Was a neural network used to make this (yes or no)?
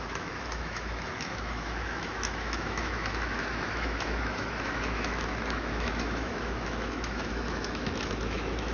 yes